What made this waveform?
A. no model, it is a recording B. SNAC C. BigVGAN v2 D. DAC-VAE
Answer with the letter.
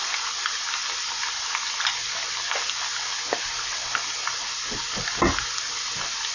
A